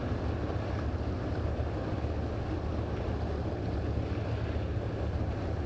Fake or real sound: real